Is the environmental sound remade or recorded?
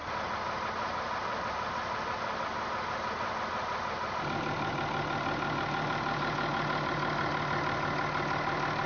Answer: recorded